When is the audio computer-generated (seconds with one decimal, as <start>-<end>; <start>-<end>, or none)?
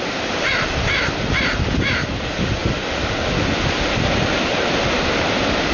0.0-2.6; 4.1-5.7